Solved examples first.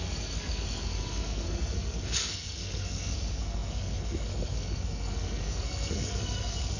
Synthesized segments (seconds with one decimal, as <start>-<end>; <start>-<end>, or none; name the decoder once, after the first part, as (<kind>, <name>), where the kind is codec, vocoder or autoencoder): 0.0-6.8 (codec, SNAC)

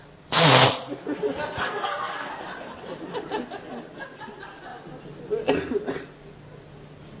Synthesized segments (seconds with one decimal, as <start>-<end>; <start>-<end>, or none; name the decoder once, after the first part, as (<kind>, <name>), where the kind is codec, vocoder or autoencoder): 1.6-2.3 (codec, SNAC)

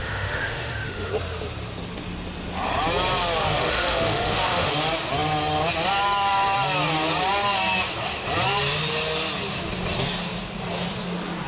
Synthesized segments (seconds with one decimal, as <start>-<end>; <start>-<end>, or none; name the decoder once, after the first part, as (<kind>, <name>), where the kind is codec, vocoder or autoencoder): 0.0-1.1 (autoencoder, DAC-VAE); 3.4-4.7